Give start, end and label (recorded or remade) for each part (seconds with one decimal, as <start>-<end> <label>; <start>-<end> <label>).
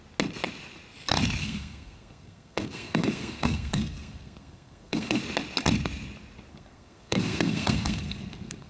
0.0-1.4 recorded; 1.4-5.2 remade; 5.2-6.5 recorded; 6.5-8.7 remade